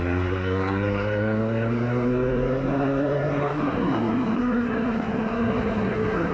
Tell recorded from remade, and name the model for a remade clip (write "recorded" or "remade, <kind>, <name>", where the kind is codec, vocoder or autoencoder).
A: remade, codec, SNAC